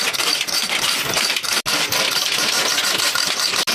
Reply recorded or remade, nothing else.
recorded